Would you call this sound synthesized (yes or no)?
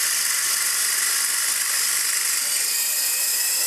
no